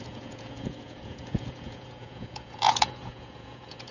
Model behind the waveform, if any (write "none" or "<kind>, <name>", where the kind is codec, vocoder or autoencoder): vocoder, Vocos